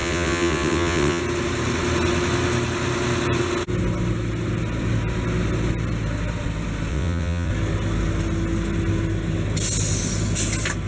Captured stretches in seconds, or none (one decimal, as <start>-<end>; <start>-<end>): 1.2-6.9; 7.5-10.9